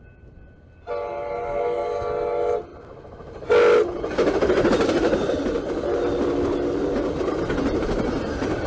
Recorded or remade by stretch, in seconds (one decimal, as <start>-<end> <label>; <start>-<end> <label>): 0.0-8.7 recorded